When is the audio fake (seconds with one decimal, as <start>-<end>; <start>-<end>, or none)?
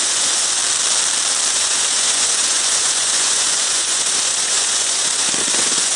0.0-0.6; 1.5-6.0